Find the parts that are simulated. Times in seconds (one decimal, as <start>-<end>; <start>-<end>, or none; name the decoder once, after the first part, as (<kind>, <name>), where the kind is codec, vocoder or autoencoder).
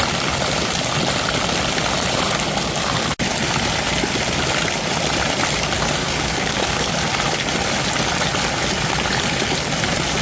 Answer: 6.0-6.9 (codec, DAC)